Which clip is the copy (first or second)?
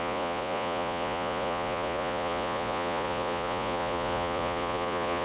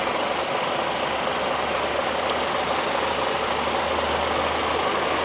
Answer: first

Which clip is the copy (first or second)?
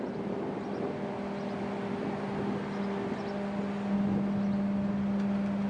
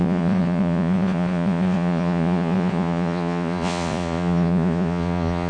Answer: second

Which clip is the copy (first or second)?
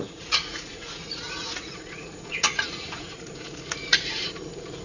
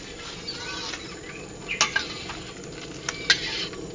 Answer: first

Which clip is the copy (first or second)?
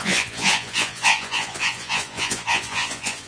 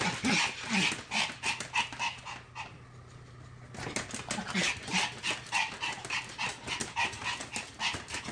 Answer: first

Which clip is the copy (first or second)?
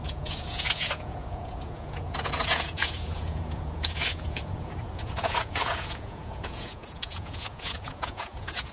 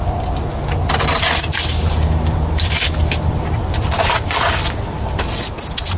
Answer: first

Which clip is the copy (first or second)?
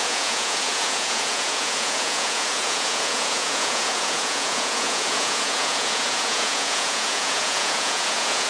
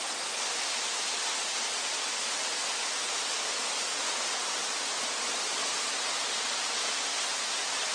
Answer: first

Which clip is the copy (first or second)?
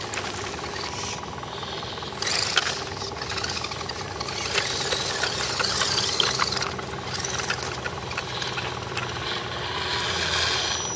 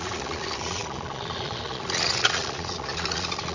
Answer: second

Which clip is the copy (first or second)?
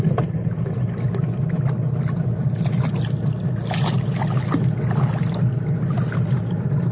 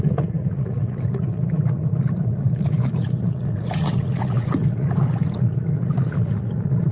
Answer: second